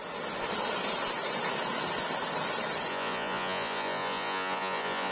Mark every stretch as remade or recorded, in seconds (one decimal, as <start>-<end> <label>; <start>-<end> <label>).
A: 0.0-2.9 recorded; 2.9-5.1 remade